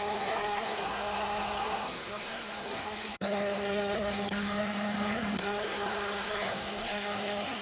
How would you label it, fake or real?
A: fake